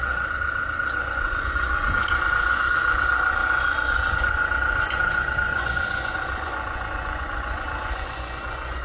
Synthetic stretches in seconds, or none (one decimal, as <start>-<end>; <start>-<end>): 0.0-8.8